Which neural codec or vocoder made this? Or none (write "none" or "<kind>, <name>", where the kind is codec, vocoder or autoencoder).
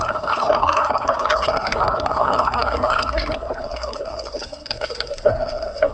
codec, SNAC